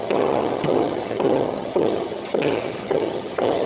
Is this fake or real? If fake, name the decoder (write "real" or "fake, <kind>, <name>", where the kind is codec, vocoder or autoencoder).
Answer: fake, vocoder, HiFi-GAN